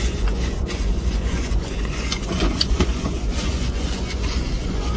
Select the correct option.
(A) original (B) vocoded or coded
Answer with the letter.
B